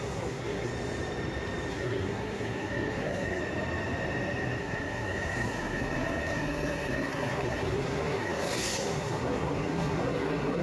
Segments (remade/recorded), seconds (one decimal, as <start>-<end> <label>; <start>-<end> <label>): 0.0-0.7 remade; 0.7-1.7 recorded; 1.7-3.4 remade; 3.4-4.6 recorded; 4.6-10.6 remade